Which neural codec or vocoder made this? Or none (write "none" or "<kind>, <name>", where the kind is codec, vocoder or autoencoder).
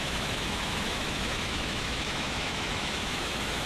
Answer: autoencoder, DAC-VAE